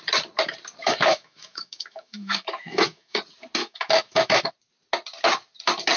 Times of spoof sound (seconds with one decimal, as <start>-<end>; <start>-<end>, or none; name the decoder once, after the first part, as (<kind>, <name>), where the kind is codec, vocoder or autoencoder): 0.8-3.2 (autoencoder, DAC-VAE); 3.6-4.5